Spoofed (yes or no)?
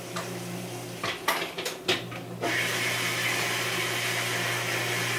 no